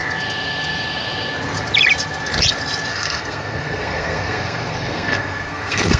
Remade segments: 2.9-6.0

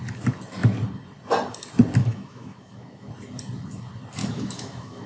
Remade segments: 2.0-3.1; 4.2-5.1